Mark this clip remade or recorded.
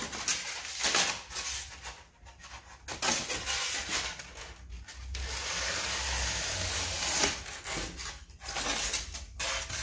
recorded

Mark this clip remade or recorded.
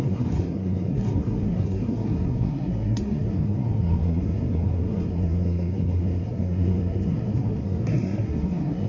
remade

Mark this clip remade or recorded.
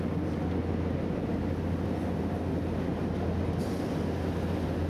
recorded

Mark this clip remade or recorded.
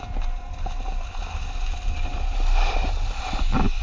recorded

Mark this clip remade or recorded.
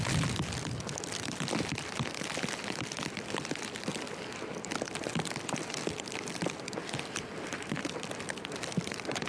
recorded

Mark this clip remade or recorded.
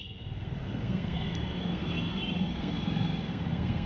remade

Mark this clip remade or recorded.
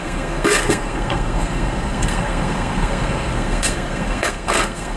remade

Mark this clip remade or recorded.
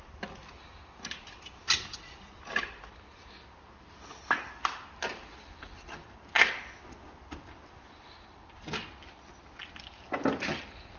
recorded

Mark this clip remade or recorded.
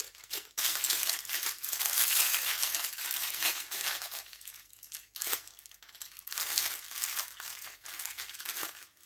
remade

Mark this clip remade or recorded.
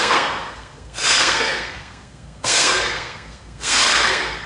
remade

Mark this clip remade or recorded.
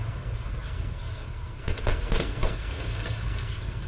remade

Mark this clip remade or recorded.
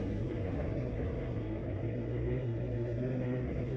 remade